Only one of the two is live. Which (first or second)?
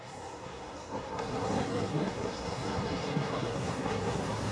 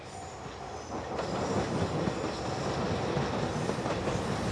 second